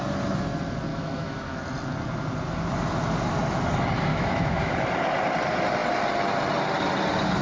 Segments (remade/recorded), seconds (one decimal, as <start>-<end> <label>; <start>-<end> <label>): 0.0-0.9 recorded; 0.9-1.6 remade; 1.6-4.1 recorded; 4.1-4.7 remade; 4.7-7.4 recorded